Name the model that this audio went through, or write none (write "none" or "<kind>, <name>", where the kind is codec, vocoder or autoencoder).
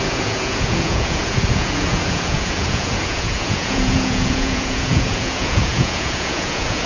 vocoder, Vocos